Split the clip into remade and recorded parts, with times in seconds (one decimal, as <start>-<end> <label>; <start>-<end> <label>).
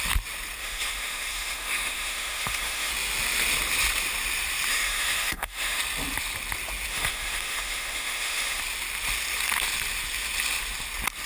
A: 0.0-0.6 recorded; 0.6-2.9 remade; 2.9-4.7 recorded; 4.7-5.8 remade; 5.8-6.9 recorded; 6.9-8.6 remade; 8.6-11.3 recorded